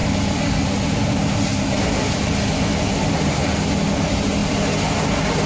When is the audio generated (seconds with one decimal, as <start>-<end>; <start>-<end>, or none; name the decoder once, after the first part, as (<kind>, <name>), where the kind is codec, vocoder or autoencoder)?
none